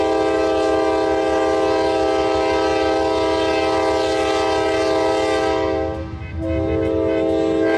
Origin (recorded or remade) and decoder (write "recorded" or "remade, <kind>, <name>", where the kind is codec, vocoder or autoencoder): recorded